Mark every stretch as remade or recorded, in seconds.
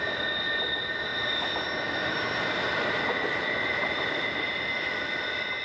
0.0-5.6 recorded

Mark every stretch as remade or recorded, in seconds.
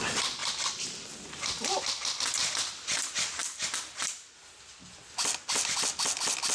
0.0-6.5 recorded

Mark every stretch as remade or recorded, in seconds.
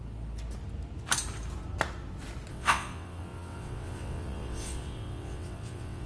0.0-2.5 recorded; 2.5-6.1 remade